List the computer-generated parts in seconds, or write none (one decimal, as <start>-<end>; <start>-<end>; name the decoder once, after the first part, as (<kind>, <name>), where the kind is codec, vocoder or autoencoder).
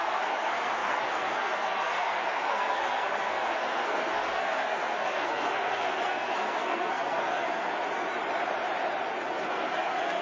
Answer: 0.0-7.7 (codec, SNAC); 9.3-10.2